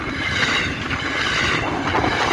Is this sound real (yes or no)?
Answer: yes